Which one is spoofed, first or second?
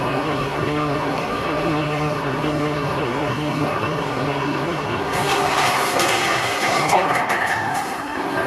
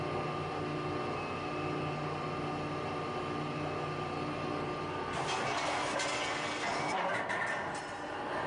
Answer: first